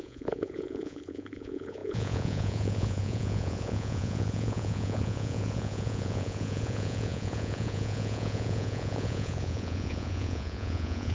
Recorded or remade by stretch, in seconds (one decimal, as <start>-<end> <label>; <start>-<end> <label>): 0.0-11.1 remade